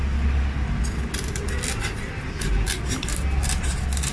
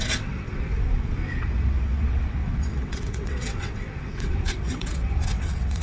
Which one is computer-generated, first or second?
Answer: second